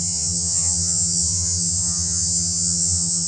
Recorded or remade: remade